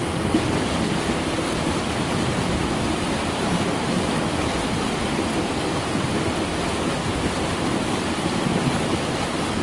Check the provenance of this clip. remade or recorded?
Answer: recorded